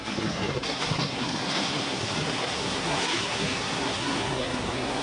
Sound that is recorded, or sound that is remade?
remade